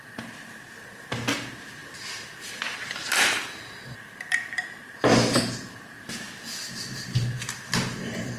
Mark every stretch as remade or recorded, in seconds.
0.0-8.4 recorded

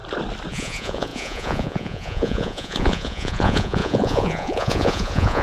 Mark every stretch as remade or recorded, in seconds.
0.0-0.5 recorded; 0.5-5.4 remade

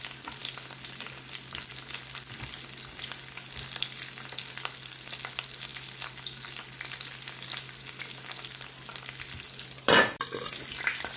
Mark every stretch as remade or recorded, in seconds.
0.0-11.2 recorded

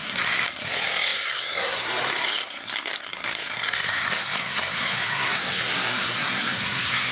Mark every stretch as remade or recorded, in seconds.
0.0-7.1 remade

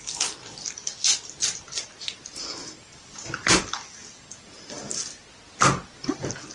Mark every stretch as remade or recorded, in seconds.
0.0-2.6 recorded; 2.6-3.6 remade; 3.6-6.5 recorded

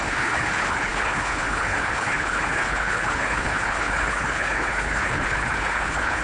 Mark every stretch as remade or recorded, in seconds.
0.0-6.2 remade

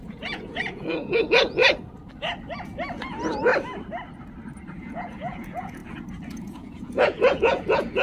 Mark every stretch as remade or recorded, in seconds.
0.0-1.6 remade; 1.6-3.0 recorded; 3.0-3.5 remade; 3.5-4.8 recorded; 4.8-5.8 remade; 5.8-6.3 recorded; 6.3-8.0 remade

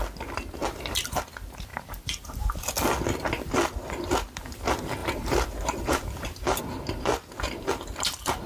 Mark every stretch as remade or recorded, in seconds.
0.0-0.6 recorded; 0.6-1.2 remade; 1.2-1.7 recorded; 1.7-2.6 remade; 2.6-5.0 recorded; 5.0-6.6 remade; 6.6-8.5 recorded